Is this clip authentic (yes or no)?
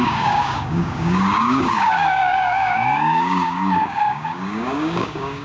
no